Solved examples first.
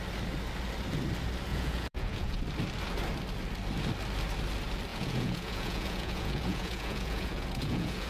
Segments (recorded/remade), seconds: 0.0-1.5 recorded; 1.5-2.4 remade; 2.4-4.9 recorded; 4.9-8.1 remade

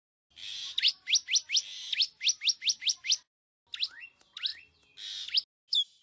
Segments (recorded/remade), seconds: 0.0-6.0 recorded

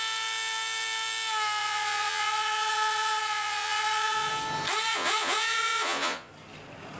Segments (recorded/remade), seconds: 0.0-1.6 recorded; 1.6-4.3 remade; 4.3-4.9 recorded; 4.9-6.3 remade; 6.3-7.0 recorded

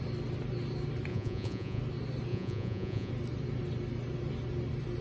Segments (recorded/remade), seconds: 0.0-1.1 recorded; 1.1-1.8 remade; 1.8-2.3 recorded; 2.3-3.1 remade; 3.1-5.0 recorded

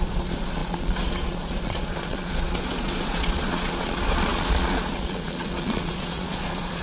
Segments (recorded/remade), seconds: 0.0-6.8 remade